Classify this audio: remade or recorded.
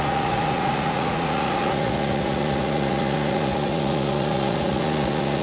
remade